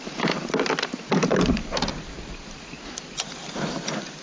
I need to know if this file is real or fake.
real